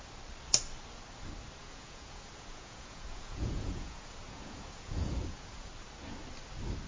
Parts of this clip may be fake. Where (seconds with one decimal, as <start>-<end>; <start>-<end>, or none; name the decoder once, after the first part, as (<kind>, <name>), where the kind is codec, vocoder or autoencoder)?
1.6-5.7 (vocoder, Vocos)